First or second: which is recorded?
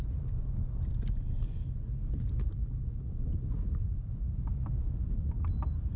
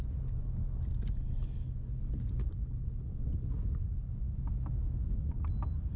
second